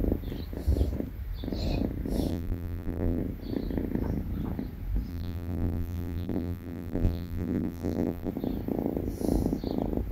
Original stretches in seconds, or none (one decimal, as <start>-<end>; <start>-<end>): 0.0-2.3; 3.2-5.1; 8.3-10.1